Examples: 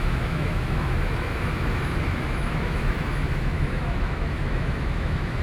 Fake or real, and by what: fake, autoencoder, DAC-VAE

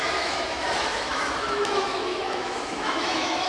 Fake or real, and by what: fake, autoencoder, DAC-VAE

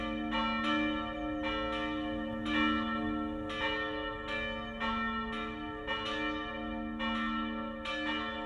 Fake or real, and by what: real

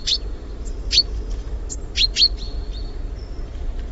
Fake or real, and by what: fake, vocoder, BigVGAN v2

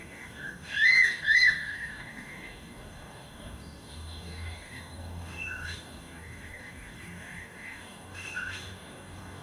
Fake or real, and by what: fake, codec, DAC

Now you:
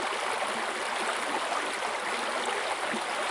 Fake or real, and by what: real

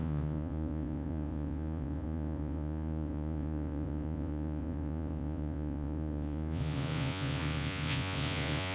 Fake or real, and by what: fake, vocoder, Vocos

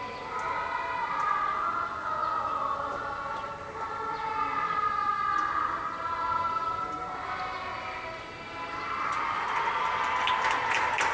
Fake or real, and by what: real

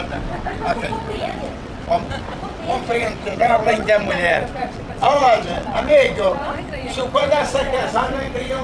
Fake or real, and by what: fake, vocoder, WaveNeXt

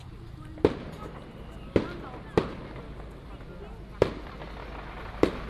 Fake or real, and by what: real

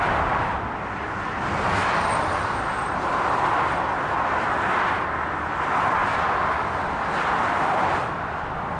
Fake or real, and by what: real